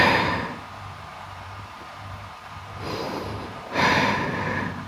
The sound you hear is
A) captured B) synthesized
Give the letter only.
B